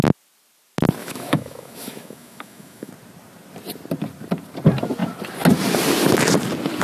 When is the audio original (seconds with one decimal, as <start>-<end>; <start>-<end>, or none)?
0.0-1.0; 2.9-6.8